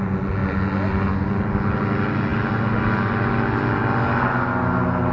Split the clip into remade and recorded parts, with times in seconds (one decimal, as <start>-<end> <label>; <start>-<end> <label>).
0.0-5.1 recorded